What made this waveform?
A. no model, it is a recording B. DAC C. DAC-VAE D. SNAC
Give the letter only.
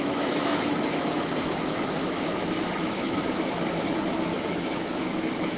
C